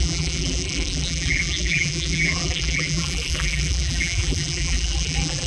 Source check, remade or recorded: remade